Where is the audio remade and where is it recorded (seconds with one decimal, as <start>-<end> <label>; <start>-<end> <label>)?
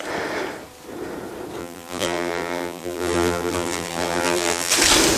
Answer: 0.0-1.6 recorded; 1.6-4.7 remade; 4.7-5.2 recorded